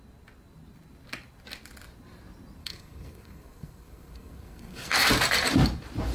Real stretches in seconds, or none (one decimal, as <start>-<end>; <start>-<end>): 0.0-2.6; 5.1-6.1

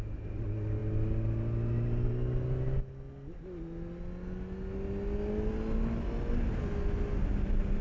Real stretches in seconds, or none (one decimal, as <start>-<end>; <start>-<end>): 0.0-7.8

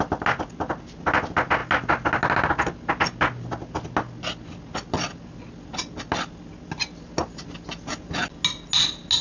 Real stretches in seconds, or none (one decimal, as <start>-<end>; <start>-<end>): 0.0-9.2

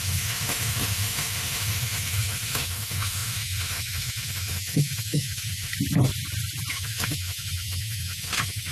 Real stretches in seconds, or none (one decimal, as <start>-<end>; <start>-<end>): 5.7-6.7

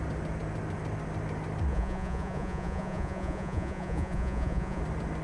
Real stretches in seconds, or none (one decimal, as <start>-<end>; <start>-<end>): 0.0-1.7; 4.8-5.2

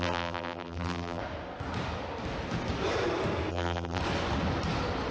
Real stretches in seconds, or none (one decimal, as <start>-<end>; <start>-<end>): 1.2-3.5; 4.0-5.1